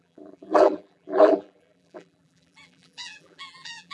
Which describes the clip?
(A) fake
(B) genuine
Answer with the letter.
A